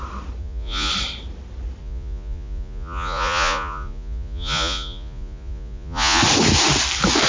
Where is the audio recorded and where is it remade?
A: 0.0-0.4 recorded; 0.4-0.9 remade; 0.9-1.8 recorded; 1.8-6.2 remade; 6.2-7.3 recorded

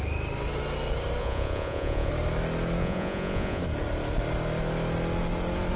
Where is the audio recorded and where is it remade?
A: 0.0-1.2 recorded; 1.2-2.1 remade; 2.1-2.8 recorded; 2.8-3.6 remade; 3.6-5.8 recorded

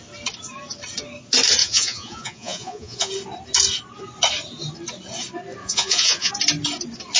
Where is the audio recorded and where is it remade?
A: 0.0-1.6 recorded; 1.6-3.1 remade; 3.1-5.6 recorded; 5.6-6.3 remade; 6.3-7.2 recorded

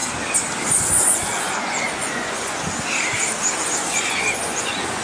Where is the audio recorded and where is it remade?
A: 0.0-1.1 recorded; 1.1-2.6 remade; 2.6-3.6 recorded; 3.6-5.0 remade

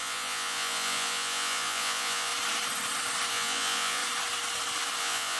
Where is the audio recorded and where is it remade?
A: 0.0-2.3 remade; 2.3-3.3 recorded; 3.3-4.0 remade; 4.0-5.0 recorded; 5.0-5.4 remade

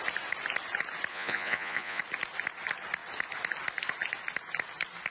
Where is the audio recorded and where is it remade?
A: 0.0-1.1 recorded; 1.1-2.0 remade; 2.0-5.1 recorded

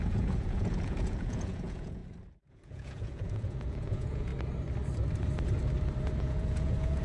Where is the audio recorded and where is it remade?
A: 0.0-2.0 remade; 2.0-2.5 recorded; 2.5-4.3 remade; 4.3-6.2 recorded; 6.2-7.0 remade